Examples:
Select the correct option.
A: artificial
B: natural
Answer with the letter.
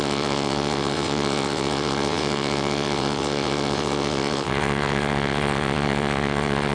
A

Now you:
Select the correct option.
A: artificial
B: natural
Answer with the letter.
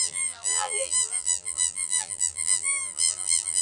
A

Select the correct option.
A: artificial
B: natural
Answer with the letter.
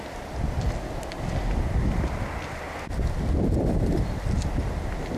B